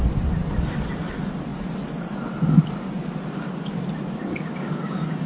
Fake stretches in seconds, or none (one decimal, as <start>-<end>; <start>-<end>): 4.3-5.3